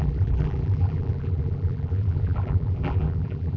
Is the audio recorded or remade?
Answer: remade